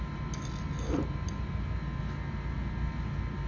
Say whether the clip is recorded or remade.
recorded